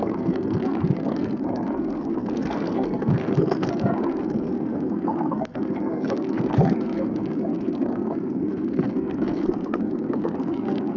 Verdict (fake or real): fake